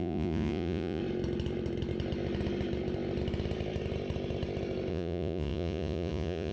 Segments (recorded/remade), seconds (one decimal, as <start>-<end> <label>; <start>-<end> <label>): 0.0-1.0 remade; 1.0-4.9 recorded; 4.9-6.5 remade